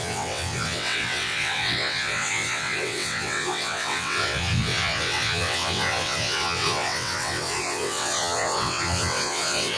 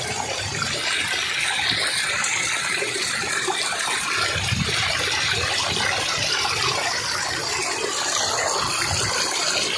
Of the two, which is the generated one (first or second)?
first